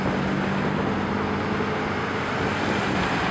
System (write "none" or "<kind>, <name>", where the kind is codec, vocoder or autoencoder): none